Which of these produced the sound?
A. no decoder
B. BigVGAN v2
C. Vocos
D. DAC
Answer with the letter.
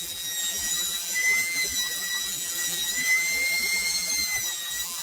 B